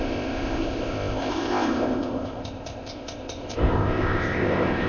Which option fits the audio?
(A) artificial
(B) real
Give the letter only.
A